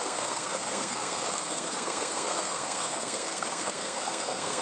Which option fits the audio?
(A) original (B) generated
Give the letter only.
B